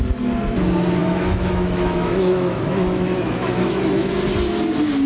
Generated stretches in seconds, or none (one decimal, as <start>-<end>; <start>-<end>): 1.0-4.1